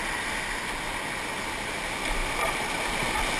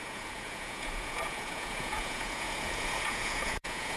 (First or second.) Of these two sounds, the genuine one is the first